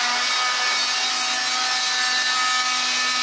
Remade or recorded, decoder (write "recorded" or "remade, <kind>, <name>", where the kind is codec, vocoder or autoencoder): recorded